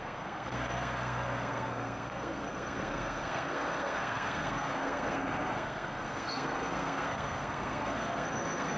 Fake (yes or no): yes